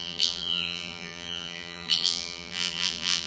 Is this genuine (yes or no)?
no